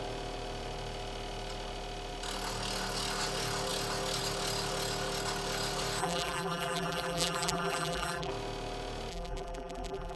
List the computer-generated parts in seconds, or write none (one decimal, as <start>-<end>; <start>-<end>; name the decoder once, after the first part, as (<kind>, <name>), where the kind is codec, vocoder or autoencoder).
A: 6.0-8.3 (vocoder, BigVGAN v2); 9.1-10.2